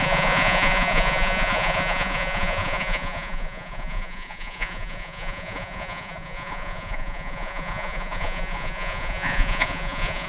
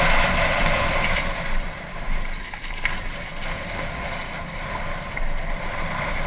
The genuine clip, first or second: second